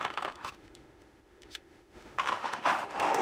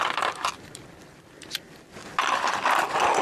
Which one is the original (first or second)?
second